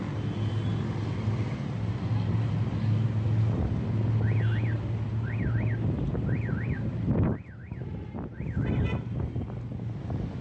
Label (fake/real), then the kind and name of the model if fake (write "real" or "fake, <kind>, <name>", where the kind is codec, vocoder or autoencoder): real